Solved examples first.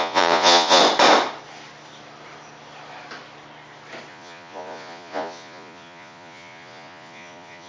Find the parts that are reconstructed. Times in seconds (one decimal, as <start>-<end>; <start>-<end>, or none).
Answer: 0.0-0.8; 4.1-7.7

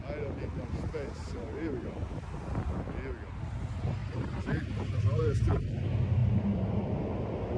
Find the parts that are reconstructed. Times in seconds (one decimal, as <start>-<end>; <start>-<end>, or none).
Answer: 1.4-2.2; 4.0-5.2

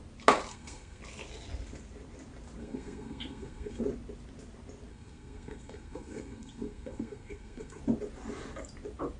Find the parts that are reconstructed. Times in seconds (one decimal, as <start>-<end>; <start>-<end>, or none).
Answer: 0.5-1.0; 2.6-3.8; 4.9-7.8